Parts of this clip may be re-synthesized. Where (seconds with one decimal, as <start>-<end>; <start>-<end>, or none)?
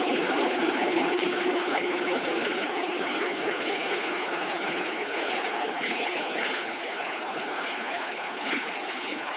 0.0-9.4